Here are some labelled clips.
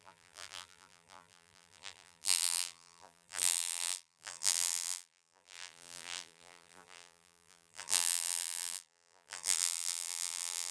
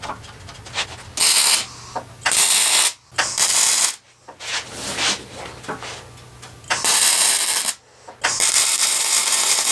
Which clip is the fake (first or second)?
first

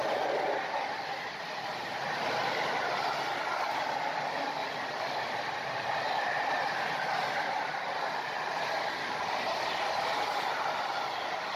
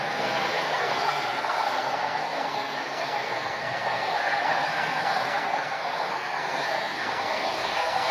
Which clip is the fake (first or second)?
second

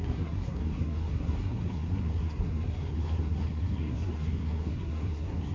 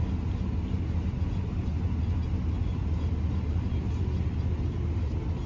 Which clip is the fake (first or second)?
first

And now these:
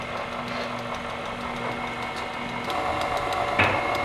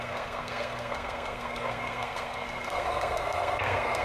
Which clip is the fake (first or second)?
second